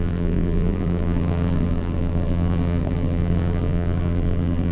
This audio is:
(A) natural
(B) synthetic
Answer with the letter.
B